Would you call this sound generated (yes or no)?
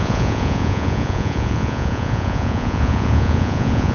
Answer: yes